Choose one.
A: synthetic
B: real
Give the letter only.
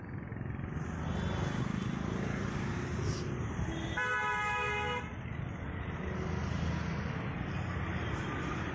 B